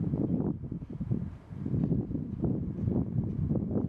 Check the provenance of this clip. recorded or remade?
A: remade